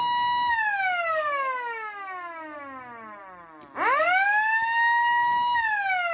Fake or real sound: real